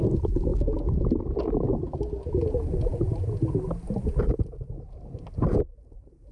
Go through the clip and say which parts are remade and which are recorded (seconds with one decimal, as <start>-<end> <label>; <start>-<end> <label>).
0.0-6.3 recorded